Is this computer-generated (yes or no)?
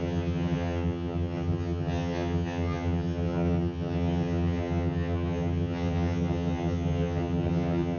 yes